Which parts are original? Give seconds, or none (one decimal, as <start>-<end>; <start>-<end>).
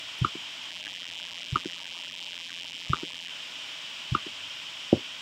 0.0-0.7; 3.3-5.2